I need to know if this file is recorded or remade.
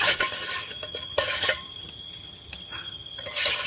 remade